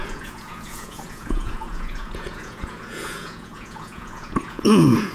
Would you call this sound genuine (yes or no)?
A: no